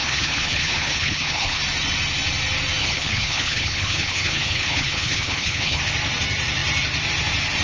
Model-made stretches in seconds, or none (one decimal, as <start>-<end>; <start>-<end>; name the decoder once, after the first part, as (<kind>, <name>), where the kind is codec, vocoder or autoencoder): 0.0-1.6 (codec, HILCodec); 2.8-5.8